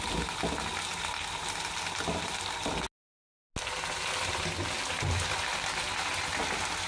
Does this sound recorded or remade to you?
recorded